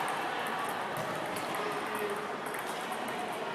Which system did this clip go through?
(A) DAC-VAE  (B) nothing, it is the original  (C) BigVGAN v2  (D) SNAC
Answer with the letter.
B